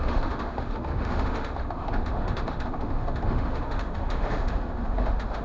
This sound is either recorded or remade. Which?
remade